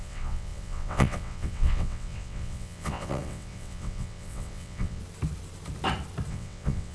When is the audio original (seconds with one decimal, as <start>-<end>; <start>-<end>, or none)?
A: 5.0-6.3

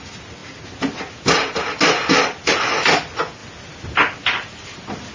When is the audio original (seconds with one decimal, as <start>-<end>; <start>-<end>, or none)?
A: 0.0-5.1

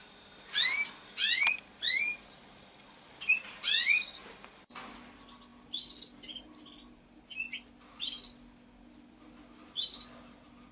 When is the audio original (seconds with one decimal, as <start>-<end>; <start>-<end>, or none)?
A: 0.0-10.7